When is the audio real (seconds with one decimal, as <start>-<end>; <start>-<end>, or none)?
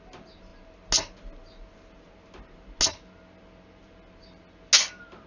0.0-5.3